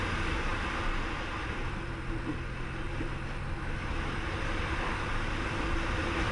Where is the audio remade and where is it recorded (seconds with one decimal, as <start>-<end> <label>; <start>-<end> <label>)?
0.0-6.3 recorded